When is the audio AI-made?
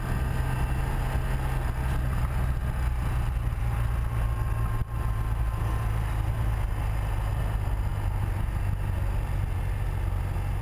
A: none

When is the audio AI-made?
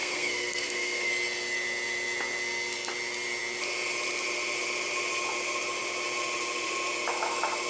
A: 0.0-1.1 (codec, SNAC)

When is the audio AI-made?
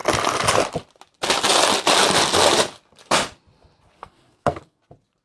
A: 4.0-4.8 (codec, SNAC)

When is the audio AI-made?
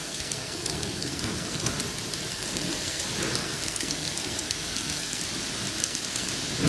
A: 0.0-1.7 (codec, SNAC); 2.3-3.0; 3.4-5.2; 5.8-6.3